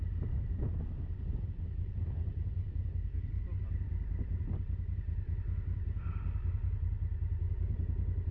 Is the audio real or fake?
real